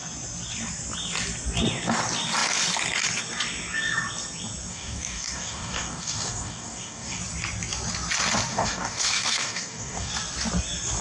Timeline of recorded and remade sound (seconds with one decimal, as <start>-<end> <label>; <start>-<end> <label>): 0.0-4.7 recorded; 4.7-7.2 remade; 7.2-8.5 recorded; 8.5-10.1 remade; 10.1-11.0 recorded